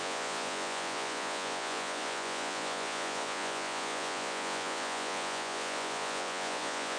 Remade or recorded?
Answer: remade